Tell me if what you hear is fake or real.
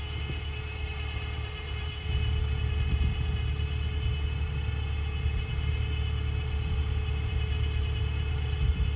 real